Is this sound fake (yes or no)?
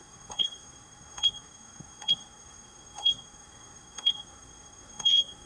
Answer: yes